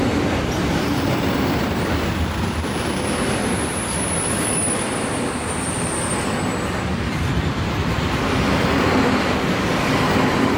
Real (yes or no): yes